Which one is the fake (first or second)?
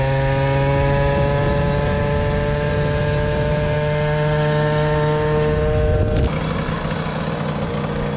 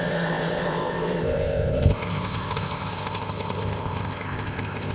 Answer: second